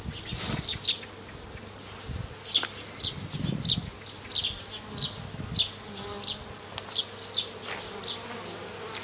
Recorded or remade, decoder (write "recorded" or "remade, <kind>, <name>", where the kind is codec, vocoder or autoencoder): recorded